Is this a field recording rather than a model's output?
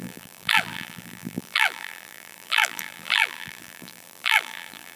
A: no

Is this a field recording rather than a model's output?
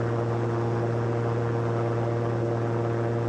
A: yes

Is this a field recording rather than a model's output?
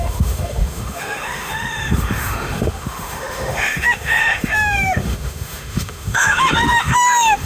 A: no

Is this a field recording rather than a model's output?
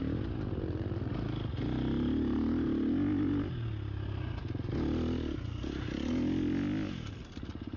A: yes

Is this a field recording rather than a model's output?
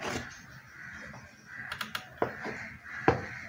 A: yes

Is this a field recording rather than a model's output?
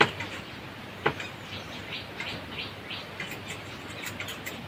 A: yes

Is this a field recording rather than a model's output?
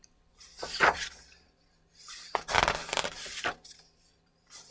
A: no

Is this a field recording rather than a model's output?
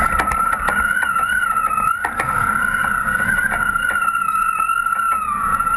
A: yes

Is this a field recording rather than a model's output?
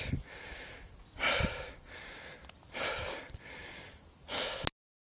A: yes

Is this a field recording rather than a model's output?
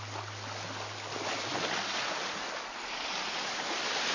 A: yes